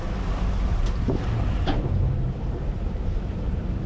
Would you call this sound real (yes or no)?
no